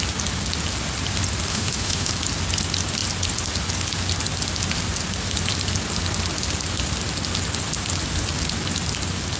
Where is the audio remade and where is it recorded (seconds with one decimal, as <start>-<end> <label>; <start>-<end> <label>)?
0.0-1.5 recorded; 1.5-2.1 remade; 2.1-9.4 recorded